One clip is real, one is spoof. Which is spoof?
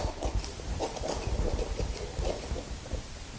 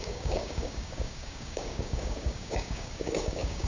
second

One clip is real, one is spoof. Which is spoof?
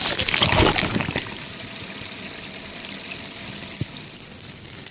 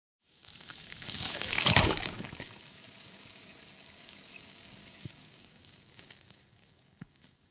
second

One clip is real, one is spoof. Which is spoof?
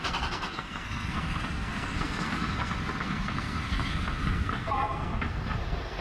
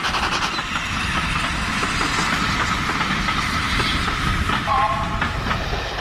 first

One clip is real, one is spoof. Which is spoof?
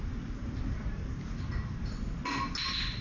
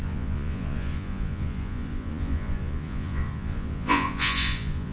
second